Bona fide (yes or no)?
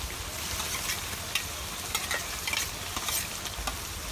yes